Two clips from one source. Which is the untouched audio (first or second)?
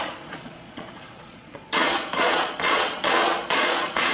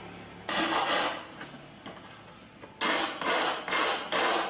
second